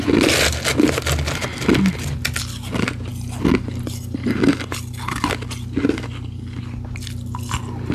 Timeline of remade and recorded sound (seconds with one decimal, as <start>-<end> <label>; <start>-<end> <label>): 0.0-7.9 recorded